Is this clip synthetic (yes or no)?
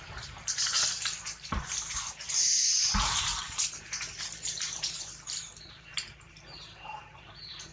yes